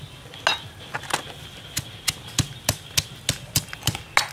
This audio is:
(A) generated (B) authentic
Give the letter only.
B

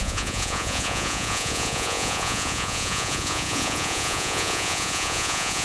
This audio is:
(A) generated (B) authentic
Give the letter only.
A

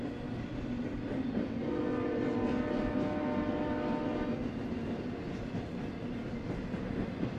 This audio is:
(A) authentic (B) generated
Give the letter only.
A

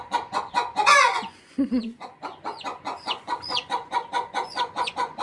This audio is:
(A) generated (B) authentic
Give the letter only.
A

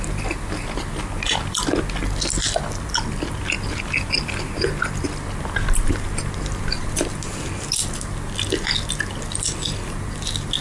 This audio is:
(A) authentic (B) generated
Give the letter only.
A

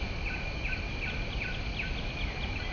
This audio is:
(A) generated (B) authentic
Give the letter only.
B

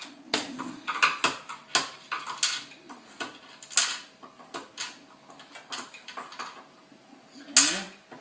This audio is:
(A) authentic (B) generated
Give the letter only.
A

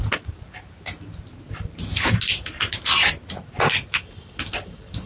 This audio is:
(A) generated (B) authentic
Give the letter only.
B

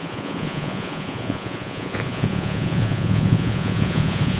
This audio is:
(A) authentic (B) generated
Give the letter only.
B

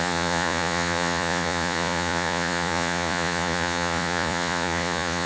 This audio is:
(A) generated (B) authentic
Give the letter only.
A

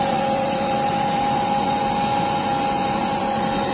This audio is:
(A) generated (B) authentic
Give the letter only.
A